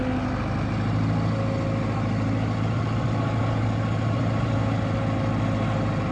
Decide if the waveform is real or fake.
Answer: real